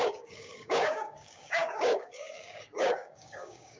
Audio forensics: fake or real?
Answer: fake